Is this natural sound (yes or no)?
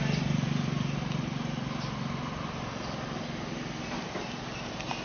yes